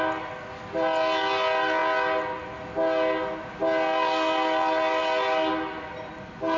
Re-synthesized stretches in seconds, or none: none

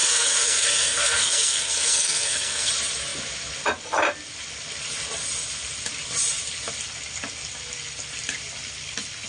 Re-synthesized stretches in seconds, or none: 0.0-2.7 (codec, SNAC)

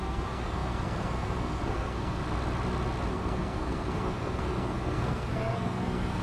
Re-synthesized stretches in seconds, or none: 0.0-2.2 (codec, SNAC); 3.1-6.2